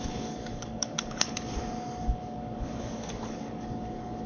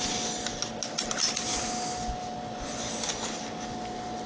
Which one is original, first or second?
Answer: second